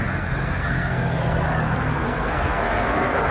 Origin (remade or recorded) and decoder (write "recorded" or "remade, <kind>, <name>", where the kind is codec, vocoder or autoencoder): remade, codec, SNAC